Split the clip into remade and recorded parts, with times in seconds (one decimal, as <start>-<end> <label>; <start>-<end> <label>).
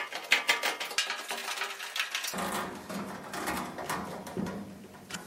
0.0-4.2 recorded; 4.2-5.3 remade